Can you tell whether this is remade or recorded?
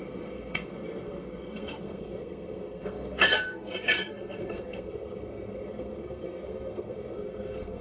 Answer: remade